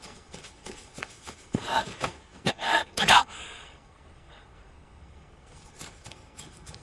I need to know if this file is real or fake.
fake